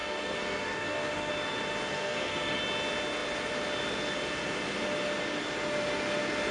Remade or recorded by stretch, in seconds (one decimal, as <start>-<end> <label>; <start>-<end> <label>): 0.0-1.3 remade; 1.3-1.9 recorded; 1.9-2.6 remade; 2.6-6.5 recorded